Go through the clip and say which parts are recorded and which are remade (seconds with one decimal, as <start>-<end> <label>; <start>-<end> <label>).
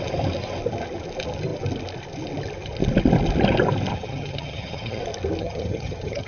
0.0-3.9 recorded; 3.9-5.0 remade; 5.0-5.4 recorded; 5.4-6.3 remade